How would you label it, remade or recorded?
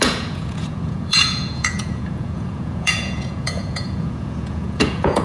remade